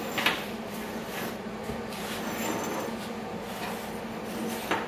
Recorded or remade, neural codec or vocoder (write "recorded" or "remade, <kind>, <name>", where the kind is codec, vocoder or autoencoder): recorded